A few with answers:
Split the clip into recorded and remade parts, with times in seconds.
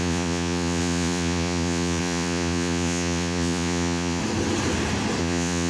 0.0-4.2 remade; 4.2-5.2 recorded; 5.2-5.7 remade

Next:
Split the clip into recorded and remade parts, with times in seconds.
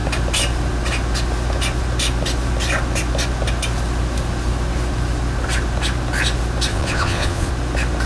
0.0-6.7 recorded; 6.7-7.5 remade; 7.5-8.1 recorded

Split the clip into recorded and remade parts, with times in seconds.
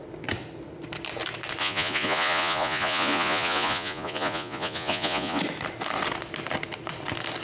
0.0-1.6 recorded; 1.6-5.4 remade; 5.4-7.4 recorded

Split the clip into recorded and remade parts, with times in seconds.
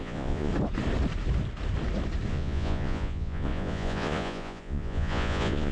0.0-0.5 remade; 0.5-2.3 recorded; 2.3-5.7 remade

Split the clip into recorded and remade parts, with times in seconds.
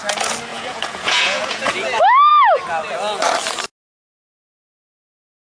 0.0-0.5 recorded; 0.5-1.7 remade; 1.7-5.5 recorded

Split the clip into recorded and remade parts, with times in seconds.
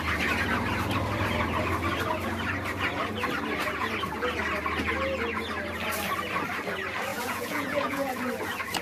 0.0-7.1 recorded; 7.1-8.1 remade; 8.1-8.8 recorded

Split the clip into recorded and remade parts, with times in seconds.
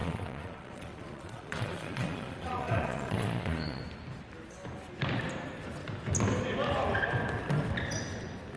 0.0-3.8 remade; 3.8-8.6 recorded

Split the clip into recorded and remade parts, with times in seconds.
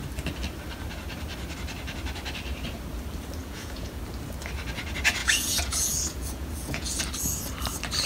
0.0-3.4 recorded; 3.4-4.0 remade; 4.0-5.2 recorded; 5.2-7.0 remade; 7.0-8.1 recorded